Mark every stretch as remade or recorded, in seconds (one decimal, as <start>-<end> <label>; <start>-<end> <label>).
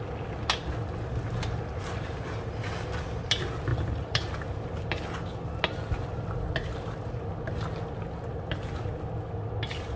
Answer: 0.0-3.7 recorded; 3.7-4.3 remade; 4.3-10.0 recorded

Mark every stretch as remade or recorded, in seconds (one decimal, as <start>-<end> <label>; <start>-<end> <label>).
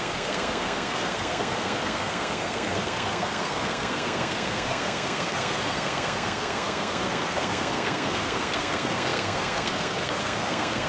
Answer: 0.0-10.9 remade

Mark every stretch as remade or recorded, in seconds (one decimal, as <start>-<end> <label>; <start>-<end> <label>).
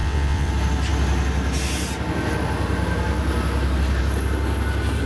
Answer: 0.0-0.5 remade; 0.5-5.1 recorded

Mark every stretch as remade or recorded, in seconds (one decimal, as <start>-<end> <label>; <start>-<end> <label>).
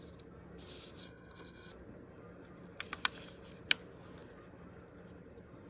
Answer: 0.0-1.0 recorded; 1.0-1.7 remade; 1.7-5.7 recorded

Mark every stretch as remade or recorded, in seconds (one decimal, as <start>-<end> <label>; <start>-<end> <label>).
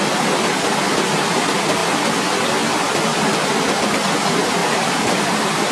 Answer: 0.0-4.6 recorded; 4.6-5.7 remade